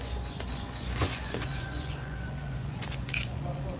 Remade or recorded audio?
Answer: remade